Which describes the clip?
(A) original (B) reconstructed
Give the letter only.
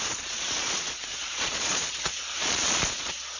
B